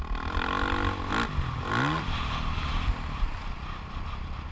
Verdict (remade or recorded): recorded